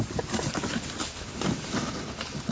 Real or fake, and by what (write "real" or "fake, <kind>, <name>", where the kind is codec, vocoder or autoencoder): real